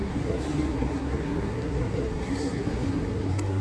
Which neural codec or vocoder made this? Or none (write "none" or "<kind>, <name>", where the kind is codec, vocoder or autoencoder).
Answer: codec, SNAC